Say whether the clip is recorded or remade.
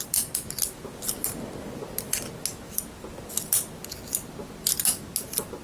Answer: recorded